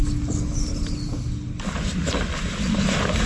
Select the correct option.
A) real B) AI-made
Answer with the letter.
A